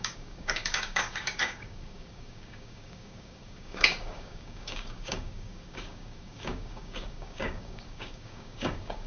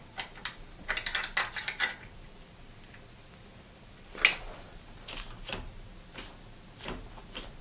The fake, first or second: first